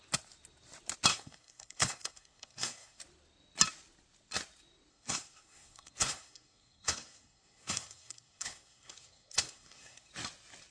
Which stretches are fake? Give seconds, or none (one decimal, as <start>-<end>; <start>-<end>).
1.1-3.0; 4.9-10.1